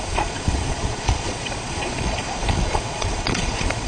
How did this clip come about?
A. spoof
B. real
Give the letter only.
A